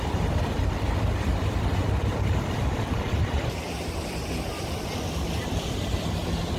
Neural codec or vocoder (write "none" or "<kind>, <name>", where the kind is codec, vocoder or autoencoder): vocoder, BigVGAN v2